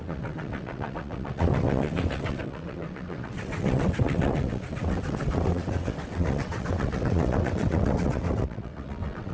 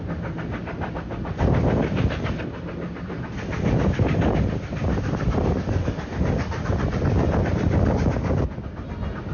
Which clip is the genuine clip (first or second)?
second